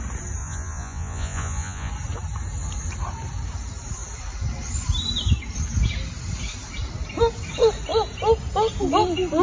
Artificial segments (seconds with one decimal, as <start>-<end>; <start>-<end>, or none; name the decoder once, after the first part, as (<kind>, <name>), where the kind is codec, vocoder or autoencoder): 0.4-1.9 (vocoder, Vocos)